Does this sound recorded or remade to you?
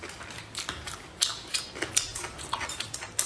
recorded